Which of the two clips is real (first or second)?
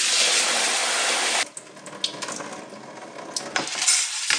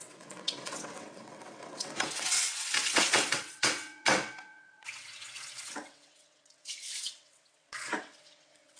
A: first